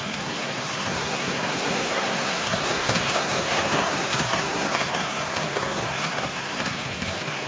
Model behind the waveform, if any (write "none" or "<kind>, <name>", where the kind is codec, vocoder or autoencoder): codec, SNAC